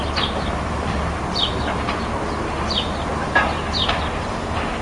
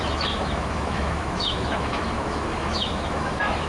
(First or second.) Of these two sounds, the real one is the first